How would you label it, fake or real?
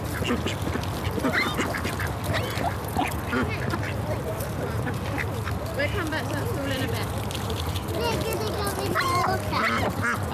real